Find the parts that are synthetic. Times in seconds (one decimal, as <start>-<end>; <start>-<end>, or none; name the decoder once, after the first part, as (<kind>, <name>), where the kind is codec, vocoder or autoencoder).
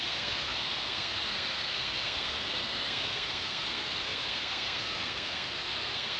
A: 0.0-6.2 (codec, SNAC)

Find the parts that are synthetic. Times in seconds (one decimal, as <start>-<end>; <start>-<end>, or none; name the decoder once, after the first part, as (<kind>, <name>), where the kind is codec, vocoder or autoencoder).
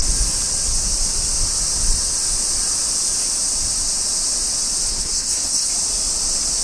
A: 4.9-5.7 (codec, SNAC)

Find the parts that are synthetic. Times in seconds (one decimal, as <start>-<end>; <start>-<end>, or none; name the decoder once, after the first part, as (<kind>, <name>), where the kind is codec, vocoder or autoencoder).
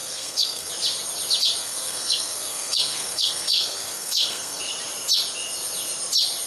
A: 0.0-0.7 (codec, SNAC); 1.6-4.6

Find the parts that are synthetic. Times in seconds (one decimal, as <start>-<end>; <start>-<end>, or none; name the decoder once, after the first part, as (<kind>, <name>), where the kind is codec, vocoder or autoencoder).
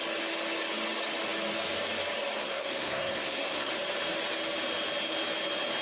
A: 2.4-3.7 (codec, SNAC)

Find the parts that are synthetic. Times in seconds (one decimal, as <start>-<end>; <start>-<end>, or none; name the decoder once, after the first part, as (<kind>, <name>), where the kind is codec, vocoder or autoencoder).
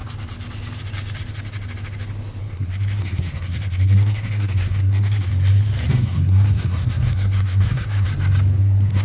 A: 2.4-5.3 (codec, SNAC); 5.9-8.1; 8.6-9.0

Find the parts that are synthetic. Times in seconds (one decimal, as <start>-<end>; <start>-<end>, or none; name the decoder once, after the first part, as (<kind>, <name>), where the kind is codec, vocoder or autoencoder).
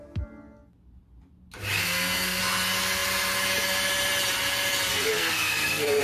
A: 1.8-2.4 (codec, SNAC); 4.9-6.0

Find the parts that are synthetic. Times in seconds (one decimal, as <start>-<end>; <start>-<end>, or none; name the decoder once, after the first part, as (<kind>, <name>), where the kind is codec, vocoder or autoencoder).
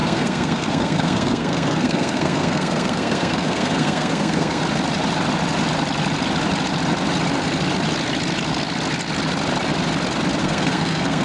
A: 0.0-4.6 (codec, SNAC); 10.4-11.2